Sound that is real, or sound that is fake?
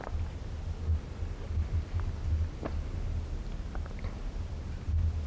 real